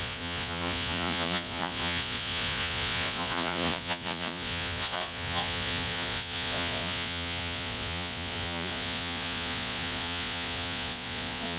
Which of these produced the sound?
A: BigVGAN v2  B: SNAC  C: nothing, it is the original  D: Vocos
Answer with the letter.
D